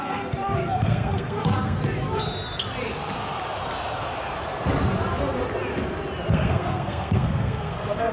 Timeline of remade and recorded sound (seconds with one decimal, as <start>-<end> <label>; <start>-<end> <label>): 0.0-1.8 remade; 1.8-6.3 recorded; 6.3-8.1 remade